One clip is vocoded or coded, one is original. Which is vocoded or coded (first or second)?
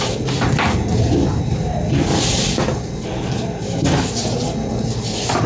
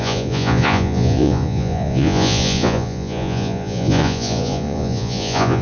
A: second